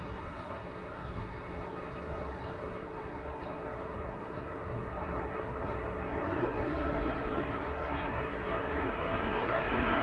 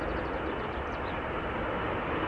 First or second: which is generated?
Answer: first